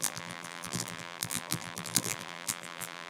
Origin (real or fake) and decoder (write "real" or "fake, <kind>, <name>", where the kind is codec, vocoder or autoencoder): fake, vocoder, BigVGAN v2